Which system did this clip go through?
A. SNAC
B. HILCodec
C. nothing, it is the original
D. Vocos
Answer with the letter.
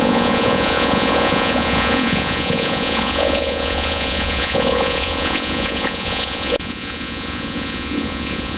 D